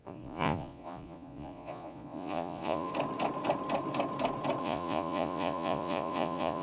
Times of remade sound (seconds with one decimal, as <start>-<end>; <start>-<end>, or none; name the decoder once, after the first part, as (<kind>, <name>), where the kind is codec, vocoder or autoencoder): 0.0-2.9 (vocoder, Vocos); 4.6-6.6